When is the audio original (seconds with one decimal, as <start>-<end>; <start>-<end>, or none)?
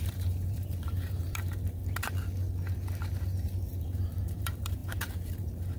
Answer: 1.8-3.8